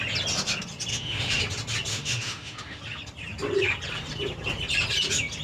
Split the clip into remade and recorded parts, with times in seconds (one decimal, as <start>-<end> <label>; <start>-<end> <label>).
0.0-0.9 recorded; 0.9-1.4 remade; 1.4-1.9 recorded; 1.9-2.8 remade; 2.8-5.4 recorded